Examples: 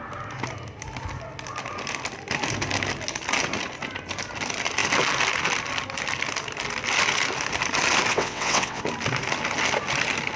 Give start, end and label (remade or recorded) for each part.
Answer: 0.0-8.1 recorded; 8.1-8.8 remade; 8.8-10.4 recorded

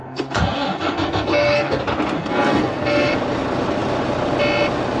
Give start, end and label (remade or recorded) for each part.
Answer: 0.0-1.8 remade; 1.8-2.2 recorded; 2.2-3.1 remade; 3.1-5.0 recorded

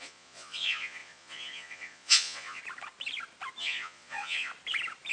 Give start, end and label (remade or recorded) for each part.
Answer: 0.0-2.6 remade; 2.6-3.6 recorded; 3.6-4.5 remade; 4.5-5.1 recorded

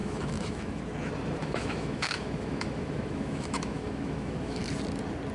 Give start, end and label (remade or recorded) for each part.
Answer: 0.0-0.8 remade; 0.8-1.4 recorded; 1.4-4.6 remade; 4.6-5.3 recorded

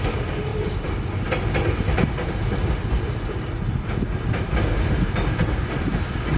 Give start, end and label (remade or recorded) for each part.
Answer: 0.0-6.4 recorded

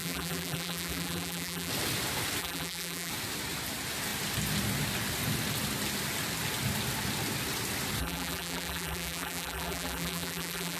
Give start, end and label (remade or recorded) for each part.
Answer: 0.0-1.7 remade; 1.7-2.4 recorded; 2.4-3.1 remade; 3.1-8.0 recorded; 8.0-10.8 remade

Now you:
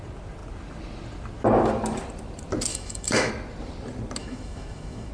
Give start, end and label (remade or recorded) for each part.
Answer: 0.0-2.7 recorded; 2.7-3.3 remade; 3.3-4.2 recorded; 4.2-5.1 remade